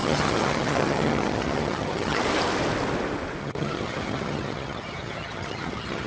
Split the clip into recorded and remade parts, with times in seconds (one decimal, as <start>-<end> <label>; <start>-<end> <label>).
0.0-2.2 remade; 2.2-3.4 recorded; 3.4-6.1 remade